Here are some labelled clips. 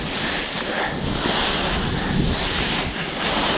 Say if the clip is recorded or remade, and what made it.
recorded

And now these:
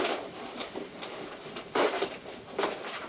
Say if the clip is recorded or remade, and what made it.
remade, vocoder, BigVGAN v2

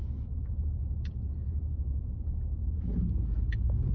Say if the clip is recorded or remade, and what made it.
remade, vocoder, Vocos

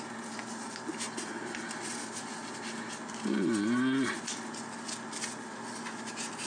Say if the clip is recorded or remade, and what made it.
recorded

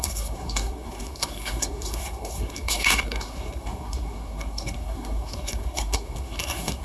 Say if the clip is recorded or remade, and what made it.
remade, codec, SNAC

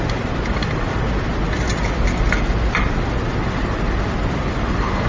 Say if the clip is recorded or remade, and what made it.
recorded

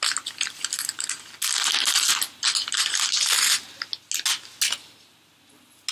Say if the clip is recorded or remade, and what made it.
recorded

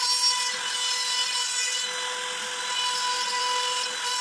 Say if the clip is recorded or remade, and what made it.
recorded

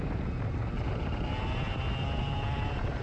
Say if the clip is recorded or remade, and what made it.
recorded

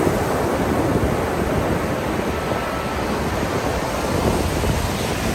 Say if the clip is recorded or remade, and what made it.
recorded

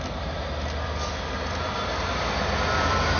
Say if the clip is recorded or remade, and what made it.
remade, vocoder, BigVGAN v2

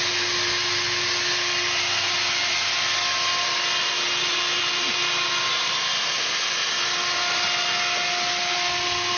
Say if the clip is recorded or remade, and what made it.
recorded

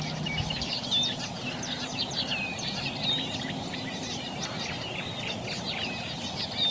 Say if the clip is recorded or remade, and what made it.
recorded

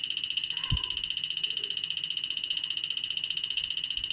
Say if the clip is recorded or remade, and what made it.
remade, autoencoder, DAC-VAE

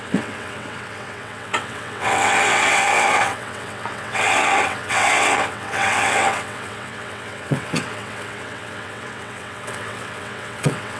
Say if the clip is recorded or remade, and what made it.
remade, vocoder, WaveNeXt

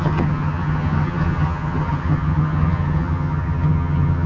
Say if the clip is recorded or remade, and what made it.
remade, vocoder, HiFi-GAN